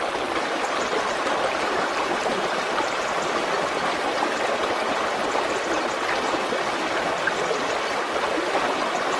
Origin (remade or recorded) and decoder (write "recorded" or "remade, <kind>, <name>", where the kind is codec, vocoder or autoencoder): recorded